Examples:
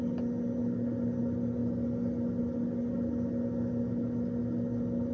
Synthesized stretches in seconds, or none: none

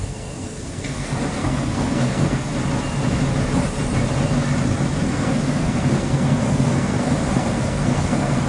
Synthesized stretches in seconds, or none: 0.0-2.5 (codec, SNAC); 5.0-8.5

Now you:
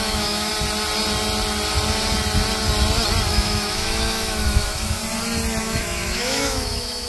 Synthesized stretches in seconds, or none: 0.0-0.5 (autoencoder, DAC-VAE); 3.3-5.0; 5.6-7.1